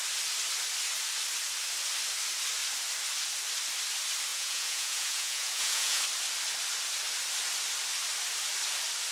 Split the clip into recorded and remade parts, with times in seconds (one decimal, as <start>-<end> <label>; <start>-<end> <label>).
0.0-4.3 recorded; 4.3-6.0 remade; 6.0-9.1 recorded